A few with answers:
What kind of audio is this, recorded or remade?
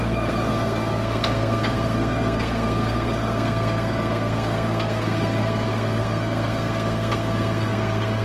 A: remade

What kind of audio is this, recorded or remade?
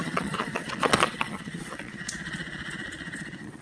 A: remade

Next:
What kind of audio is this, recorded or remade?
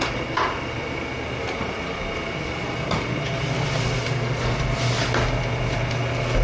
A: recorded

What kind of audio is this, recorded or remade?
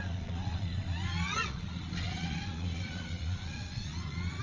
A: remade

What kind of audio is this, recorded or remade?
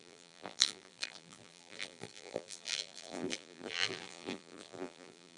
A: remade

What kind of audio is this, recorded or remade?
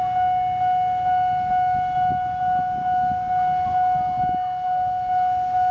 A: recorded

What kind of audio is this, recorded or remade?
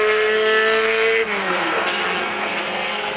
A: remade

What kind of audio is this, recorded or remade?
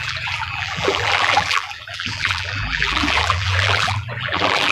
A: remade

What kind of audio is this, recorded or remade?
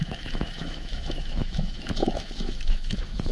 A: remade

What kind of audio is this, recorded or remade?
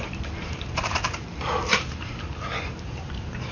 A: remade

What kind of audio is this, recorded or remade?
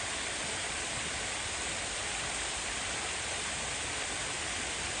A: recorded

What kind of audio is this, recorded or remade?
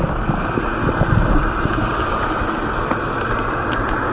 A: recorded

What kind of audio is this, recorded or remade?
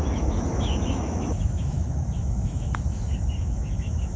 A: remade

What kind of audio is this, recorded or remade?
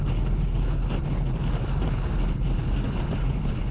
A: recorded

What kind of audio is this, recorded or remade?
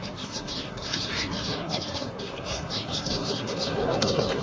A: remade